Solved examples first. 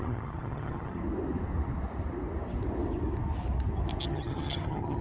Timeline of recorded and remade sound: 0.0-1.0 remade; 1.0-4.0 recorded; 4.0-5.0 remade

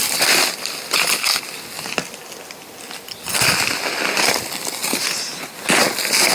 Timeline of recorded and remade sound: 0.0-4.8 remade; 4.8-5.5 recorded; 5.5-6.3 remade

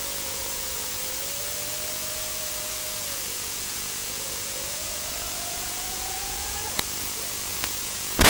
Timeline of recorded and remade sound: 0.0-8.3 remade

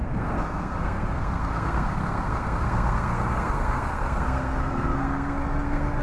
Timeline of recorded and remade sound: 0.0-6.0 remade

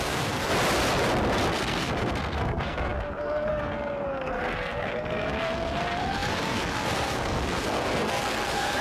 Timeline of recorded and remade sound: 0.0-0.5 remade; 0.5-1.5 recorded; 1.5-8.8 remade

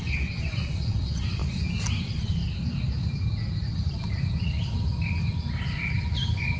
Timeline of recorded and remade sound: 0.0-1.4 remade; 1.4-2.0 recorded; 2.0-2.4 remade; 2.4-6.6 recorded

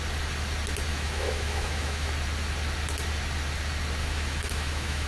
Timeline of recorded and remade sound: 0.0-0.9 recorded; 0.9-2.1 remade; 2.1-4.0 recorded; 4.0-5.1 remade

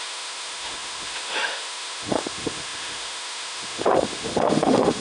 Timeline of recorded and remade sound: 0.0-5.0 remade